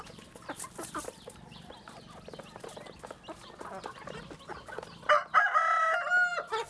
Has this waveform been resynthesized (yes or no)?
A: no